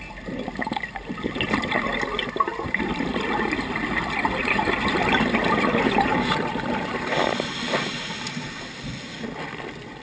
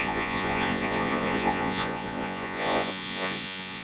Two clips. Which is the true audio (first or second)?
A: first